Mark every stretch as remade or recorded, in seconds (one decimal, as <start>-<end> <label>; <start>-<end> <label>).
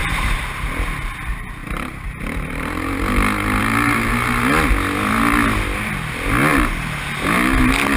0.0-1.6 recorded; 1.6-3.0 remade; 3.0-3.6 recorded; 3.6-4.4 remade; 4.4-8.0 recorded